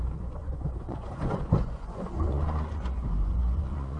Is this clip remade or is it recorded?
remade